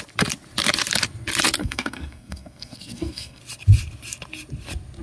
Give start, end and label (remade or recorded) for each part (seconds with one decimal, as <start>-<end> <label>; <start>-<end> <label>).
0.0-1.6 recorded; 1.6-3.4 remade; 3.4-5.0 recorded